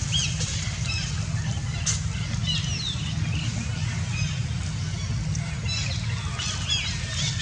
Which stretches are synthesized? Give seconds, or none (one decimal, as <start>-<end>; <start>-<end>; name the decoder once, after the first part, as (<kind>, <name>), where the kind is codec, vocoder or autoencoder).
0.0-1.1 (vocoder, BigVGAN v2)